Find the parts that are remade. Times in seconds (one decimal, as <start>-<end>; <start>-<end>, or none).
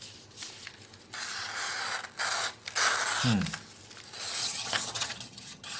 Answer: 4.4-5.8